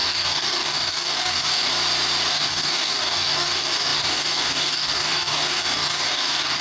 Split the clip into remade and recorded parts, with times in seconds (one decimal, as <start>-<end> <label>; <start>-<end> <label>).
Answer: 0.0-1.7 remade; 1.7-2.3 recorded; 2.3-6.6 remade